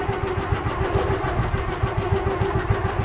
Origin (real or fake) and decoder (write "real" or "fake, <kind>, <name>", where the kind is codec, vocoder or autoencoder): real